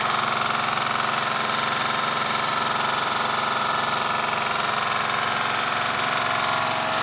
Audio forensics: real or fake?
real